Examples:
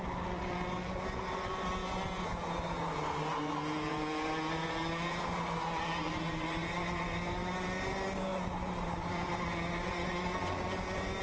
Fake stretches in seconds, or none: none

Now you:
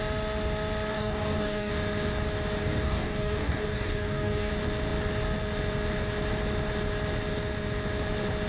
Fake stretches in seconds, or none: 0.9-1.7 (codec, DAC); 2.6-4.5

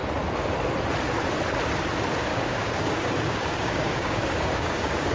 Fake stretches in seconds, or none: 2.3-5.1 (codec, DAC)

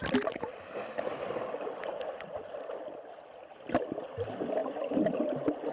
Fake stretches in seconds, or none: none

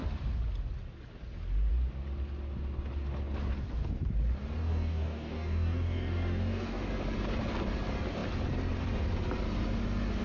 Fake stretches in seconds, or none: 4.6-6.9 (codec, DAC)

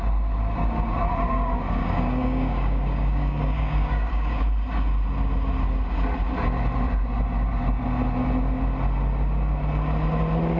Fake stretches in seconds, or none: 1.8-4.4 (codec, DAC)